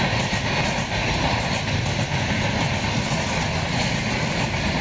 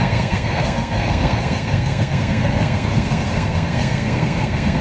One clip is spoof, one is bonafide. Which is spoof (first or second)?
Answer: second